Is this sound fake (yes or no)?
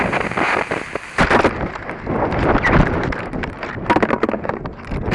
no